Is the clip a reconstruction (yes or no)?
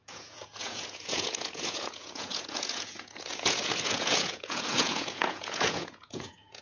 yes